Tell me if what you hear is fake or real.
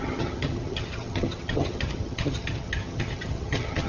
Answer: fake